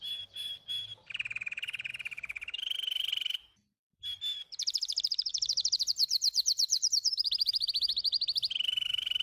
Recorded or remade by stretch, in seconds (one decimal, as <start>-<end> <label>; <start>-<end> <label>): 0.0-1.9 recorded; 1.9-4.2 remade; 4.2-5.3 recorded; 5.3-7.7 remade; 7.7-9.2 recorded